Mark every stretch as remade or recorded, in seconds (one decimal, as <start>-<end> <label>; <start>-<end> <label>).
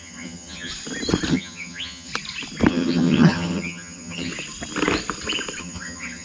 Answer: 0.0-0.7 remade; 0.7-1.3 recorded; 1.3-2.1 remade; 2.1-2.7 recorded; 2.7-4.3 remade; 4.3-5.6 recorded; 5.6-6.2 remade